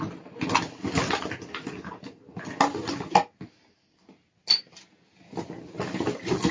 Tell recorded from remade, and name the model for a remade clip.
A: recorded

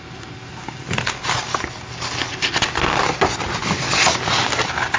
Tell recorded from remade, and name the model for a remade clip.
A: recorded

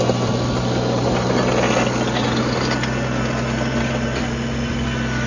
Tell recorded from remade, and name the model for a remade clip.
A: recorded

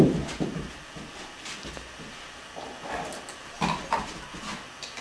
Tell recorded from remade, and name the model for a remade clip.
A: recorded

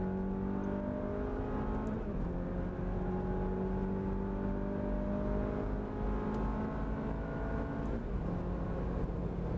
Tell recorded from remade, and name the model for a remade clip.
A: recorded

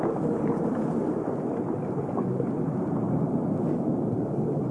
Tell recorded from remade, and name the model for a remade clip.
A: recorded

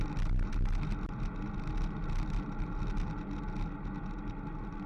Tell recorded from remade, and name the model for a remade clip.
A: recorded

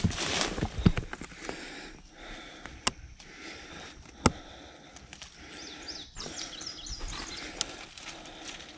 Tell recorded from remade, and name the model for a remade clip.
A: recorded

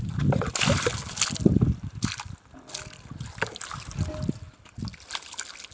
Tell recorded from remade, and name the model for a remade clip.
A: recorded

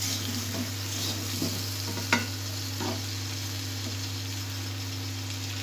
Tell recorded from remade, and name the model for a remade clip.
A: recorded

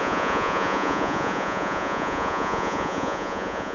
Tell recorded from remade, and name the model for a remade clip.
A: remade, vocoder, Vocos